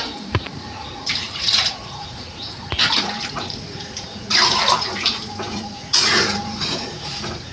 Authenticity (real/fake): fake